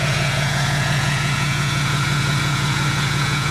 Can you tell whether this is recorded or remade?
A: remade